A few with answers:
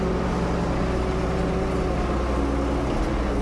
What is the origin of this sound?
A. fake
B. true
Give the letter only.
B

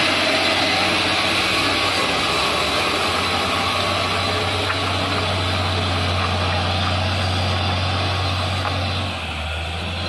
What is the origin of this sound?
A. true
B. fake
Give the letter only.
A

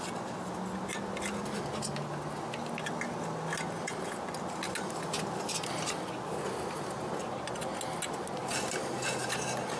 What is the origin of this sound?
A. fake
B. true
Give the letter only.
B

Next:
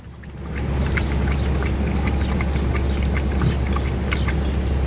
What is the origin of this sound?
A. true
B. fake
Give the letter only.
A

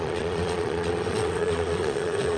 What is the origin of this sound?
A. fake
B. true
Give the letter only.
A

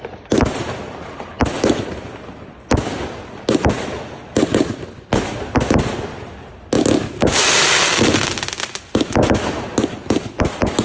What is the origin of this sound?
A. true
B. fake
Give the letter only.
A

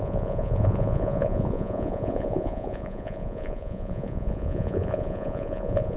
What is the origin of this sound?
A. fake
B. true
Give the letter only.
A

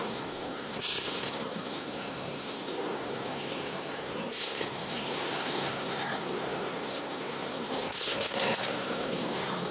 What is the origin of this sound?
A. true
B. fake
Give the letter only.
B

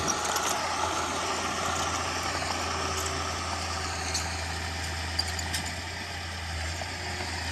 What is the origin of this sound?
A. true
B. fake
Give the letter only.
A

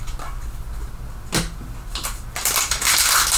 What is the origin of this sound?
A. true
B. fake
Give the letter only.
A